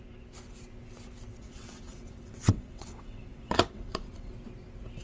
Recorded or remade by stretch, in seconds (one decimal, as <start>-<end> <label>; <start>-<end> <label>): 0.0-1.4 recorded; 1.4-4.3 remade; 4.3-5.0 recorded

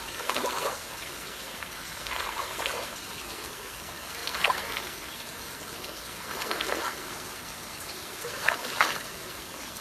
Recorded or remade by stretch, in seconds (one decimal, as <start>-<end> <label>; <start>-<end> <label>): 0.0-9.8 remade

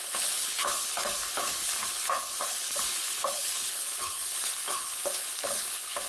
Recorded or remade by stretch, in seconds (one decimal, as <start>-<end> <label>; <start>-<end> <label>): 0.0-6.1 remade

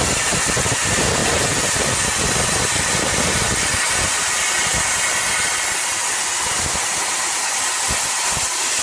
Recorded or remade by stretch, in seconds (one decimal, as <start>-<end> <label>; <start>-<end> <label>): 0.0-8.8 recorded

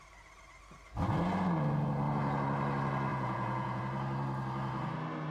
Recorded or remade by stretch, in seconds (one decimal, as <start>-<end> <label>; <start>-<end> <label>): 0.0-3.1 recorded; 3.1-3.8 remade; 3.8-5.3 recorded

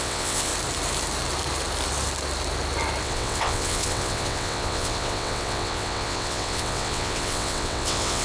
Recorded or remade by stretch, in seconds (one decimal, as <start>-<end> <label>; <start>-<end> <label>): 0.0-0.5 remade; 0.5-3.0 recorded; 3.0-8.2 remade

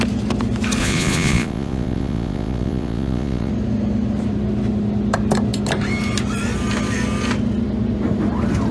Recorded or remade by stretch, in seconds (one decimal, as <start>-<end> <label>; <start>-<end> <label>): 0.0-0.8 recorded; 0.8-3.5 remade; 3.5-8.7 recorded